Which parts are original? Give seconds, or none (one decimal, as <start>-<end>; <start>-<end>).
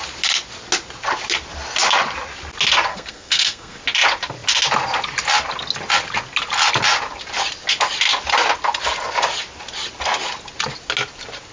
0.0-2.9; 3.8-11.5